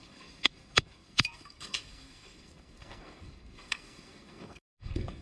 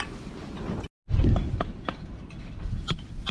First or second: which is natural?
second